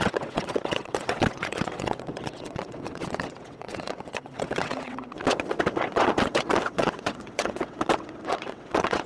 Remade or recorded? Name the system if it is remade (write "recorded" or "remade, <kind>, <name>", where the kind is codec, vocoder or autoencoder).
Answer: remade, vocoder, WaveNeXt